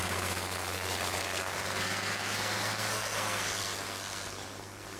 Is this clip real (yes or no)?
no